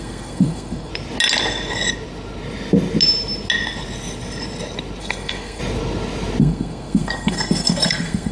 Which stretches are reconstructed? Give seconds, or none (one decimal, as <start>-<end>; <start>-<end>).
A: 0.0-0.9; 5.0-5.6; 6.4-8.3

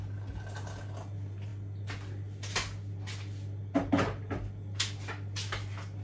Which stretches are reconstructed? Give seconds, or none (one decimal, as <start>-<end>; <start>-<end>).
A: none

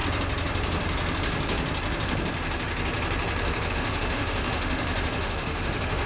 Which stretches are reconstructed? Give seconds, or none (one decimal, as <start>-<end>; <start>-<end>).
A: 3.7-6.1

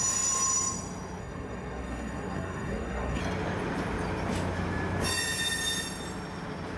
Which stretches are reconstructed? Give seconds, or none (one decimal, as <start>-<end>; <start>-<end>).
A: 1.2-3.2

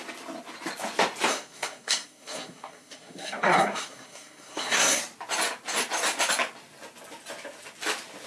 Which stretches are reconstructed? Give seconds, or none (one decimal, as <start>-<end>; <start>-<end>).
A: 1.3-5.0